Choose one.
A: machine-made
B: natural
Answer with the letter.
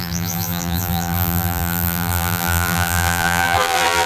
A